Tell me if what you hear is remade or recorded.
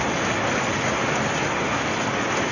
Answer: recorded